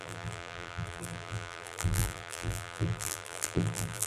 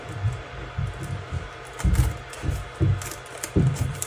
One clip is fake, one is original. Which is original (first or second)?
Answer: second